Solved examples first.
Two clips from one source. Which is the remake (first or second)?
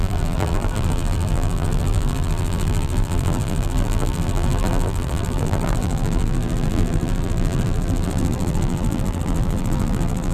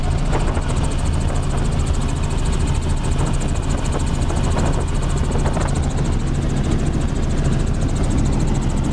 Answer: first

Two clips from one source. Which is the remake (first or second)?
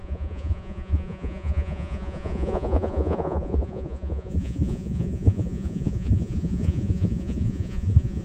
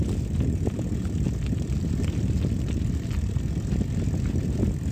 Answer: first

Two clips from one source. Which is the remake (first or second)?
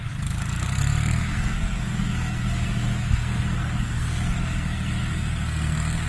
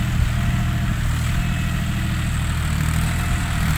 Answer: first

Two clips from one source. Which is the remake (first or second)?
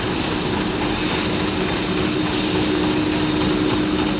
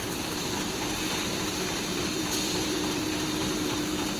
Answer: second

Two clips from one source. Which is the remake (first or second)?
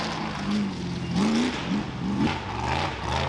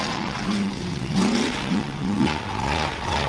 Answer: second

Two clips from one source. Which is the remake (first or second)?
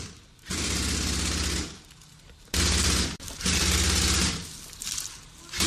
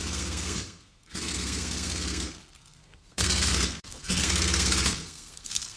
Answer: second